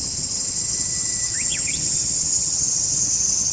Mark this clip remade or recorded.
remade